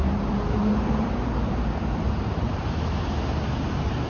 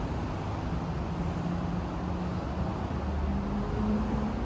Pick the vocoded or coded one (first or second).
first